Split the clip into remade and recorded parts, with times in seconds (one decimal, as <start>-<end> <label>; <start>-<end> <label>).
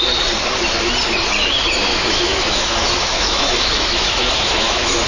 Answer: 0.0-1.9 recorded; 1.9-5.1 remade